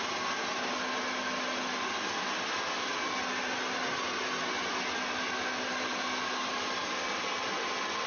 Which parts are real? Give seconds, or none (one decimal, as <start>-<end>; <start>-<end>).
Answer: 0.0-8.1